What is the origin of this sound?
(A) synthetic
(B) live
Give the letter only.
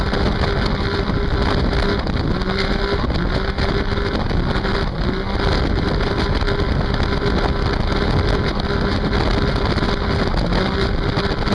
B